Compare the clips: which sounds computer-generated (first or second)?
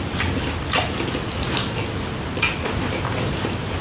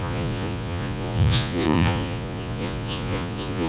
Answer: second